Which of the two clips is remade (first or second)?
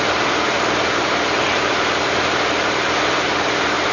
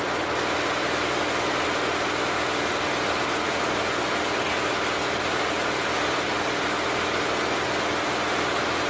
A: first